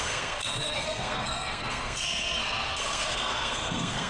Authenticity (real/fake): fake